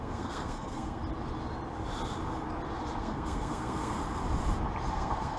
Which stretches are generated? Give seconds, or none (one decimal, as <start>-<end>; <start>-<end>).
0.0-1.0; 3.0-4.0; 4.9-5.4